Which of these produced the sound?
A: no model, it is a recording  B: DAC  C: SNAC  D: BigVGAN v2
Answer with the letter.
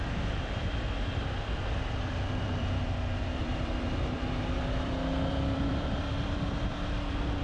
D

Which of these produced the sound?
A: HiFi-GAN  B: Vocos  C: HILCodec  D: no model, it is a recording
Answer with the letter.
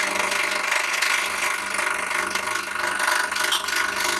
D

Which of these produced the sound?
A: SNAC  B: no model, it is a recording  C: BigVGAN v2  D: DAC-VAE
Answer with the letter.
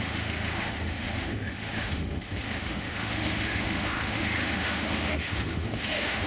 D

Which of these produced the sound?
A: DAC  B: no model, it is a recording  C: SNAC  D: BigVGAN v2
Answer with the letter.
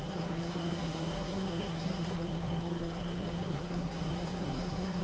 C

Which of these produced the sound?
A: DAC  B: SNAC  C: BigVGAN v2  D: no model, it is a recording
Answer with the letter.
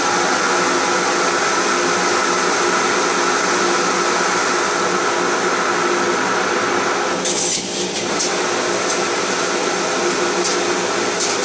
D